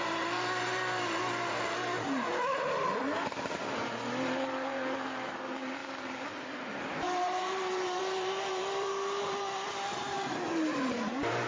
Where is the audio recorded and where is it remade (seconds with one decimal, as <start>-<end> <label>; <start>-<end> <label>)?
0.0-2.9 remade; 2.9-3.8 recorded; 3.8-11.5 remade